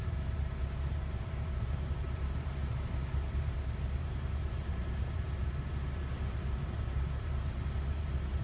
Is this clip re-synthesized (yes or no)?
yes